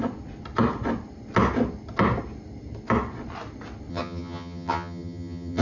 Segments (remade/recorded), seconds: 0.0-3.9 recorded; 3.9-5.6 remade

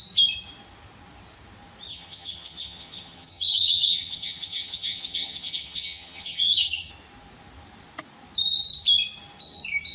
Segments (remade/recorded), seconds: 0.0-1.9 recorded; 1.9-6.9 remade; 6.9-9.9 recorded

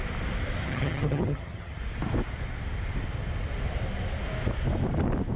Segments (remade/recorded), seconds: 0.0-0.6 recorded; 0.6-1.8 remade; 1.8-5.4 recorded